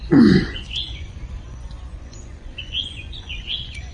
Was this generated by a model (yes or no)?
yes